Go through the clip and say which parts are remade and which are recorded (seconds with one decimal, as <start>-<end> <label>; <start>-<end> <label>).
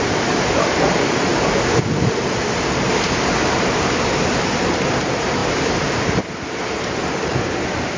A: 0.0-8.0 recorded